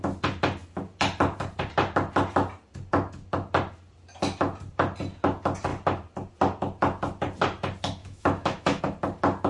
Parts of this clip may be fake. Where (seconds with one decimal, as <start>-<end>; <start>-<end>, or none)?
8.0-8.8